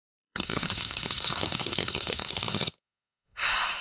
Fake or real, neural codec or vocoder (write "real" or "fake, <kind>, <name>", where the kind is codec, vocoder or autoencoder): fake, codec, SNAC